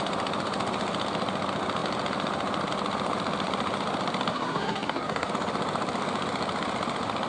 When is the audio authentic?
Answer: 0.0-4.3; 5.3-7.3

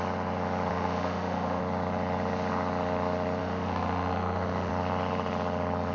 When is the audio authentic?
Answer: 0.0-0.7; 1.6-3.4; 4.7-5.9

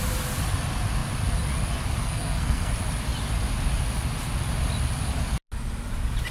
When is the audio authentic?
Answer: 0.0-2.0; 2.7-6.3